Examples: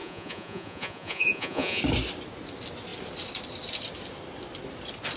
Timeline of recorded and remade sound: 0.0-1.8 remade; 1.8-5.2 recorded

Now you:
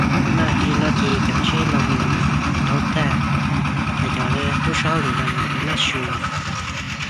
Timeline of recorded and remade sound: 0.0-7.1 recorded

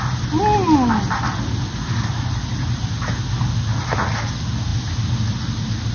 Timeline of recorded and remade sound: 0.0-5.9 recorded

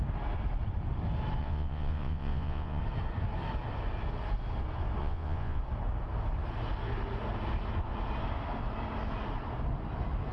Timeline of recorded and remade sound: 0.0-1.4 recorded; 1.4-2.8 remade; 2.8-5.0 recorded; 5.0-5.6 remade; 5.6-10.3 recorded

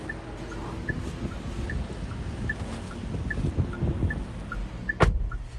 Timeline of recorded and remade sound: 0.0-5.6 recorded

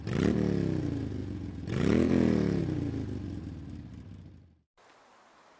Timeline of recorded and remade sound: 0.0-1.2 recorded; 1.2-2.6 remade; 2.6-5.6 recorded